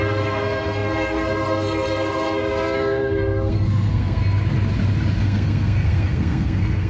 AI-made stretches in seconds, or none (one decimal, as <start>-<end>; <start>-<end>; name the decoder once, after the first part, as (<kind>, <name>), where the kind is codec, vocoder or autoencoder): 0.0-4.2 (codec, SNAC); 5.2-6.9